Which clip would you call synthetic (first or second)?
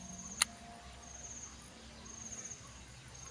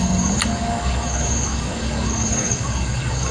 second